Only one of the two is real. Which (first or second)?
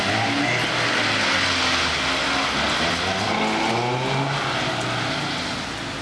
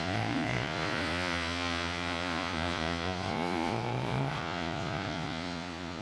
first